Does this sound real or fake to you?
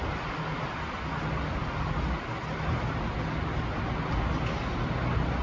real